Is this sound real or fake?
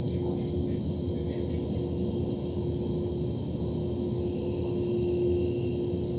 real